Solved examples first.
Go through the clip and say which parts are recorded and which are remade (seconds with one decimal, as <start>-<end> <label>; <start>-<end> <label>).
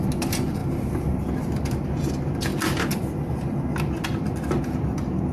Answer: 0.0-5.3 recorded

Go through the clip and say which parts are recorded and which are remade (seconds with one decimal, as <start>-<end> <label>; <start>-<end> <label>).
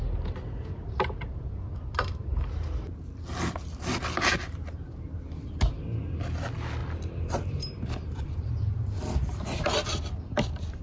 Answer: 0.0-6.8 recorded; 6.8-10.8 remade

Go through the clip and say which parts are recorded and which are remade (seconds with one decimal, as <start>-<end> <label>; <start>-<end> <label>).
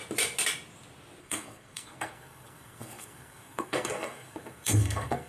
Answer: 0.0-1.2 recorded; 1.2-5.3 remade